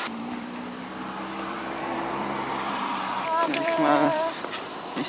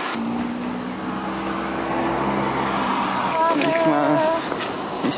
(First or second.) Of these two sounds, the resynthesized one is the first